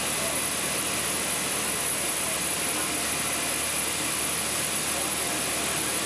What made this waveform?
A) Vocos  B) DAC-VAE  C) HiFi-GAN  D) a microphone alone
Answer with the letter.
D